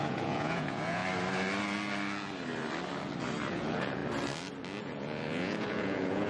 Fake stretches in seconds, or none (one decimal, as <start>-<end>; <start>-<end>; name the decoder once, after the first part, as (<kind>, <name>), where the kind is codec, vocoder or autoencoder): 0.0-1.0 (vocoder, Vocos); 3.5-4.0; 4.8-6.3